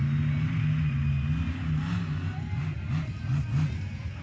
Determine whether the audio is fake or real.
real